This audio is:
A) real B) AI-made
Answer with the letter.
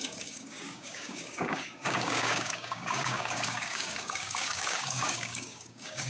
B